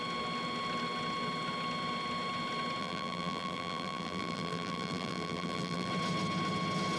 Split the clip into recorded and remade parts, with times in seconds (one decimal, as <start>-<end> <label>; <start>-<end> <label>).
0.0-2.8 recorded; 2.8-5.9 remade; 5.9-7.0 recorded